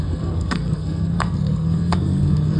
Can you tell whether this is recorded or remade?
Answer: remade